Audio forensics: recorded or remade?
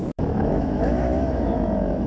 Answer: remade